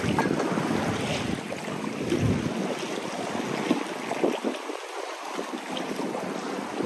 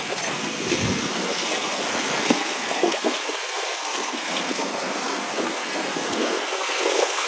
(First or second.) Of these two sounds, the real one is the first